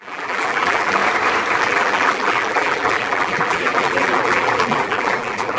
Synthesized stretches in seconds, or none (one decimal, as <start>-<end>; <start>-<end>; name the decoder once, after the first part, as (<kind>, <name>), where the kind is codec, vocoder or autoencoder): 0.0-1.0 (vocoder, BigVGAN v2); 1.6-5.6